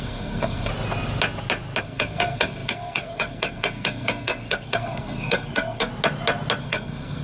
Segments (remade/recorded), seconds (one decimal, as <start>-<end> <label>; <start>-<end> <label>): 0.0-0.7 remade; 0.7-1.8 recorded; 1.8-5.9 remade; 5.9-6.6 recorded; 6.6-7.2 remade